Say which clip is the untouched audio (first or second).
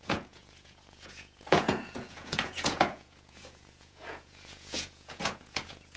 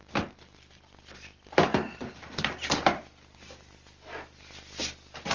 second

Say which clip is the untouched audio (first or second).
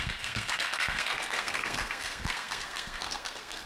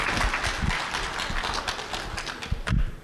second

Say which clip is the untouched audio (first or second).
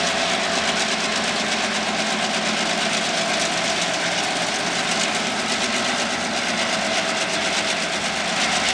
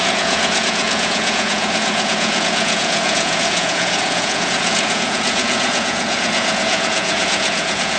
first